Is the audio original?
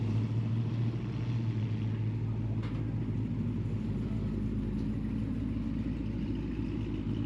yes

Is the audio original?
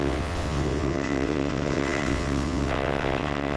no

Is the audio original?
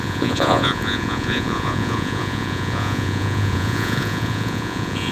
no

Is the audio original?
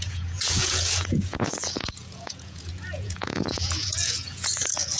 no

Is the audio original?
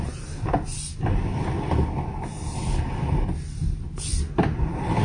yes